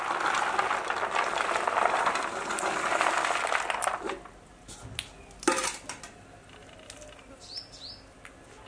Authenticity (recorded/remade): recorded